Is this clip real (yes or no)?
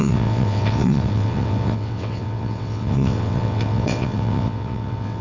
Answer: no